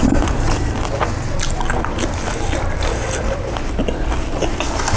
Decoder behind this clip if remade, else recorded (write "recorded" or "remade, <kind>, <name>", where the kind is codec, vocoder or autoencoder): recorded